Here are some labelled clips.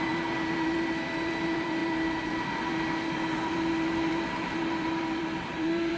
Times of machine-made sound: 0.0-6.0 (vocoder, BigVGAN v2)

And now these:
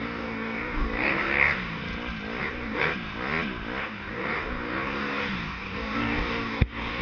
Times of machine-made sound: 0.0-1.8 (codec, DAC); 2.4-2.9; 3.8-7.0

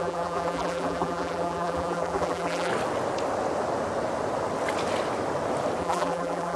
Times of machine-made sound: 0.0-2.7 (vocoder, BigVGAN v2); 5.8-6.6